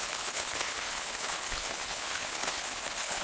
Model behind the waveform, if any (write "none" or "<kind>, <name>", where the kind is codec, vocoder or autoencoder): codec, HILCodec